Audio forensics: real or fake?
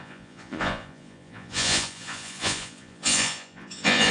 fake